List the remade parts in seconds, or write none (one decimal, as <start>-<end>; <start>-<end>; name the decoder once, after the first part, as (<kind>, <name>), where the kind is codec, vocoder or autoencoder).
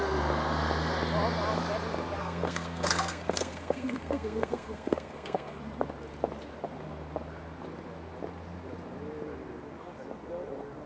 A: 2.2-5.6 (codec, SNAC)